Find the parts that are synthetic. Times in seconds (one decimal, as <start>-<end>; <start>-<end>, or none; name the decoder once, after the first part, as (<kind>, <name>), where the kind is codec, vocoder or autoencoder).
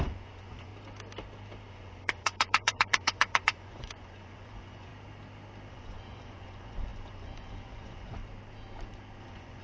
0.0-0.7 (vocoder, Vocos); 1.7-4.9; 5.7-8.2; 9.2-9.6